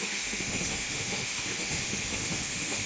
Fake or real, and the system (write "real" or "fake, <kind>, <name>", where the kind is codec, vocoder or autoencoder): fake, autoencoder, DAC-VAE